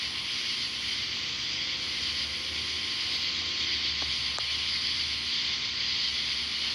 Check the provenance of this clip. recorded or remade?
recorded